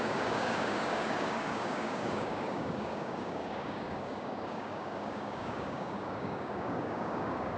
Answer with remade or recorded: remade